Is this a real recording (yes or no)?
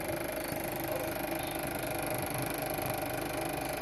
yes